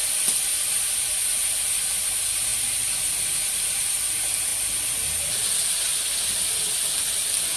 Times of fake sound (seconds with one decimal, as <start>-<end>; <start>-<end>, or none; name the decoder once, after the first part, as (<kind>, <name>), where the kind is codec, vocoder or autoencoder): none